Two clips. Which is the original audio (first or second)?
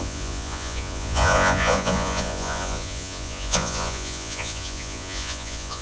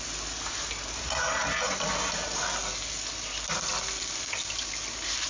second